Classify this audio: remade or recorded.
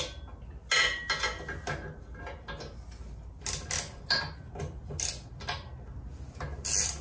recorded